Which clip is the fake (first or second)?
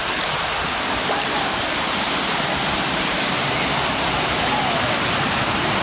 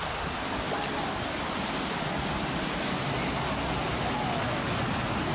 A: first